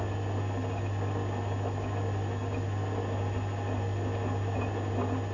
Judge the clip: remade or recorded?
recorded